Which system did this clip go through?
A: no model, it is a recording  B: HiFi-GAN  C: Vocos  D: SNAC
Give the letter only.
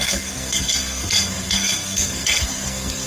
D